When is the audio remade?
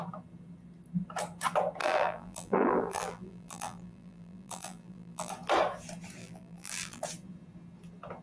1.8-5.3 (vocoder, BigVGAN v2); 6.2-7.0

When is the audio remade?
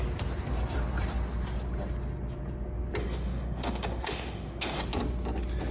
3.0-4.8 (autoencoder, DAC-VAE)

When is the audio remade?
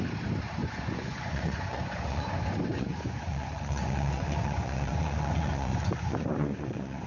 0.6-2.3 (vocoder, Vocos); 2.7-7.1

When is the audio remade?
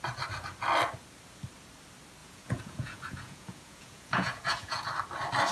2.2-4.9 (vocoder, Vocos)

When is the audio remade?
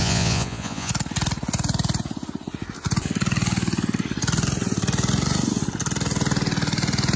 0.0-0.9 (vocoder, Vocos)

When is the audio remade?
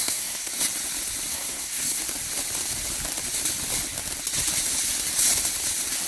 0.0-0.5 (codec, SNAC); 1.3-2.0